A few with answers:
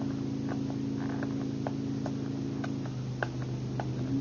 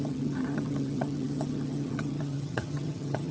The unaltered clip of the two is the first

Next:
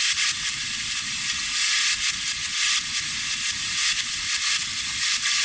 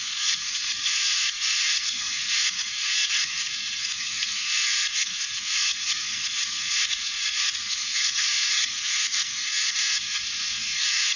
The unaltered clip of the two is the first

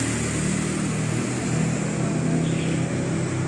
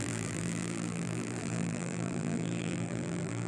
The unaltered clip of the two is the first